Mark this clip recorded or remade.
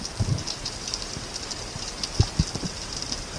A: recorded